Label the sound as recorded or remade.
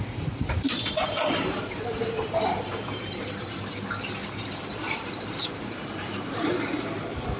remade